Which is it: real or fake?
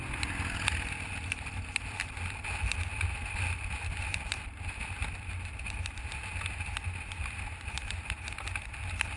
real